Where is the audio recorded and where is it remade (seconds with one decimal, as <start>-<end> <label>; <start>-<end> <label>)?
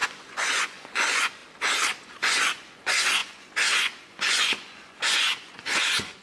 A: 0.0-1.4 remade; 1.4-2.0 recorded; 2.0-6.2 remade